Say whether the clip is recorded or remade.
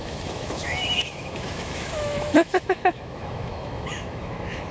remade